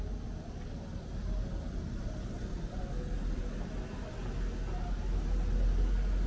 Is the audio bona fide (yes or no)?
yes